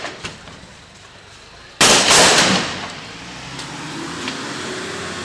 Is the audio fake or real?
real